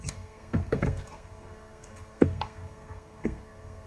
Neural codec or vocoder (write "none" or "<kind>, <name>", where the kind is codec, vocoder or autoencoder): codec, SNAC